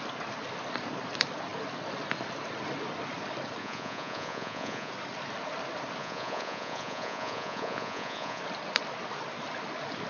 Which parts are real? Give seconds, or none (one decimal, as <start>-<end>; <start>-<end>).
0.0-3.6; 4.9-6.0; 8.4-10.1